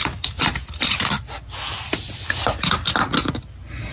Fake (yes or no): no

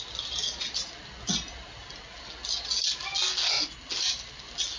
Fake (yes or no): no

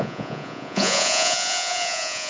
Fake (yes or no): yes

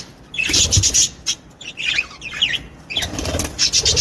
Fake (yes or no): no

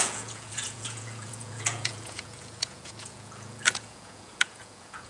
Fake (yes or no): yes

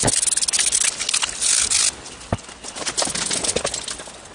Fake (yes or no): no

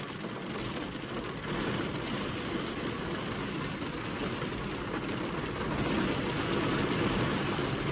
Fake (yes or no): no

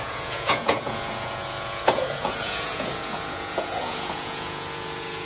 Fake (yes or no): yes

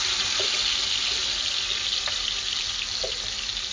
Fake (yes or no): no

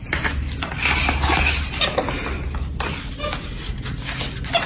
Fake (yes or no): no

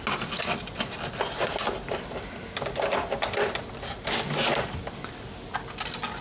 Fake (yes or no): no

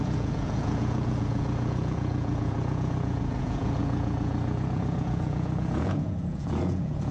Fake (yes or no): yes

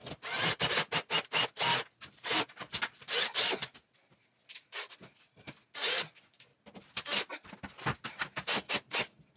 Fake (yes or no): no